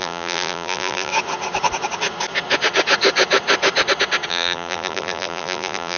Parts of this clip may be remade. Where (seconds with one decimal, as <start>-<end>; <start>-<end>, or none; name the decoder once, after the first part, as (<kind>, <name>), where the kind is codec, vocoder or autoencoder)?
0.0-1.1 (vocoder, BigVGAN v2); 4.3-6.0